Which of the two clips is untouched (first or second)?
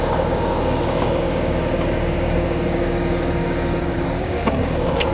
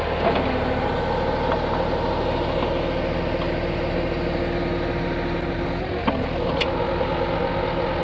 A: second